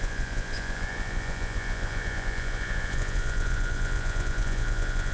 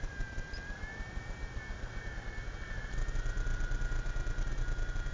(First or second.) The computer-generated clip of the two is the first